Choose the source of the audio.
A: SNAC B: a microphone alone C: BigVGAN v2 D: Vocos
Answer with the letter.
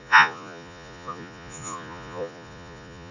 D